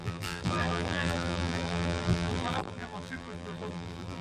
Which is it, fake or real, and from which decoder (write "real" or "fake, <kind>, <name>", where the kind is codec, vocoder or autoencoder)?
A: fake, vocoder, BigVGAN v2